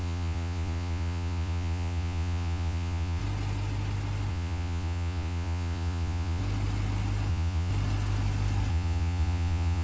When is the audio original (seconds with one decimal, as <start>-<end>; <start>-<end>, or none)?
3.2-4.3; 6.4-7.3; 7.7-8.7